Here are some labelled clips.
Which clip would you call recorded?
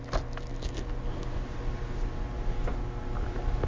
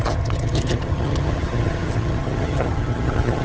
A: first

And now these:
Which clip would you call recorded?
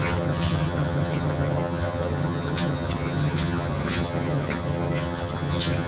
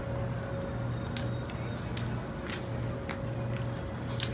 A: second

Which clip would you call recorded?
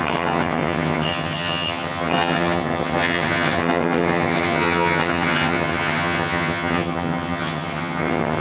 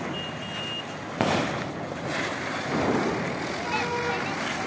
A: second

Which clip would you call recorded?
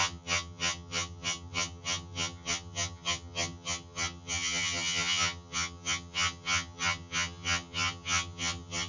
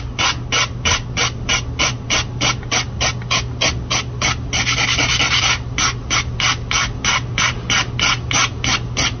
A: second